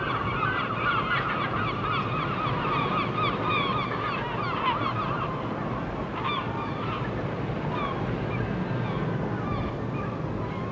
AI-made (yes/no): no